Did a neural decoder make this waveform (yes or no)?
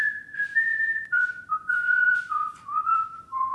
yes